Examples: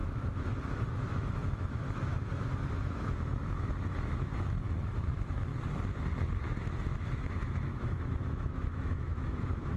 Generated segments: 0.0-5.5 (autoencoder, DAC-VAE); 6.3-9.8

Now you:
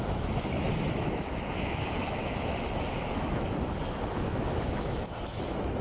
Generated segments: 0.0-5.8 (autoencoder, DAC-VAE)

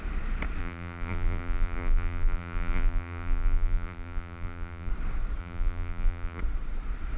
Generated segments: 0.6-4.9 (vocoder, BigVGAN v2); 5.4-6.4

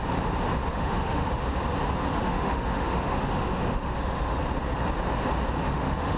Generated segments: 0.7-1.3 (autoencoder, DAC-VAE); 2.1-4.4; 5.6-6.2